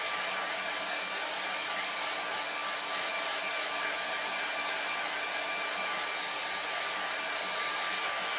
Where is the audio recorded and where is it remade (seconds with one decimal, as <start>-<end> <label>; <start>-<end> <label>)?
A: 0.0-8.4 recorded